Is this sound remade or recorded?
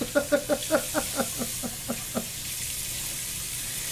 recorded